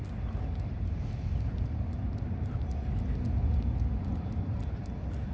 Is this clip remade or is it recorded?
recorded